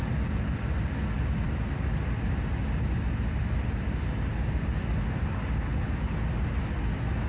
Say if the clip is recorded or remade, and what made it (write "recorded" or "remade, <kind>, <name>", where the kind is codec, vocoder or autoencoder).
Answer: recorded